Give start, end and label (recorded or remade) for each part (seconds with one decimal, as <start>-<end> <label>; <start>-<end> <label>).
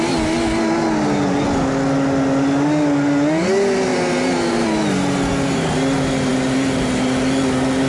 0.0-7.9 recorded